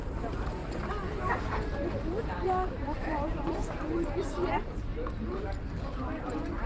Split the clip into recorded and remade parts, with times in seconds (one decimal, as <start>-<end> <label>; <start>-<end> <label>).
0.0-0.6 remade; 0.6-1.4 recorded; 1.4-3.6 remade; 3.6-4.5 recorded; 4.5-4.9 remade; 4.9-5.4 recorded; 5.4-6.7 remade